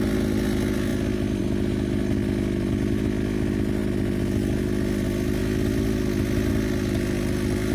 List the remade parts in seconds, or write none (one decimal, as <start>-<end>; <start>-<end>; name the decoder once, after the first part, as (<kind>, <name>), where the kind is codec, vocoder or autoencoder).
none